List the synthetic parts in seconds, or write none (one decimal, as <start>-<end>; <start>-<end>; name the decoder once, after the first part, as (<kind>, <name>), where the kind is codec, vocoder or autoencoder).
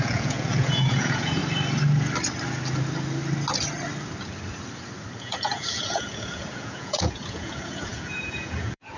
0.0-1.4 (vocoder, Vocos); 5.2-9.0